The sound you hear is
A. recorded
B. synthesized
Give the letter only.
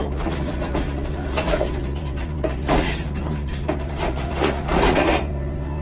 B